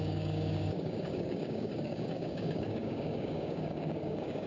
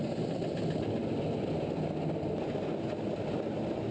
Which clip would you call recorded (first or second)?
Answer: second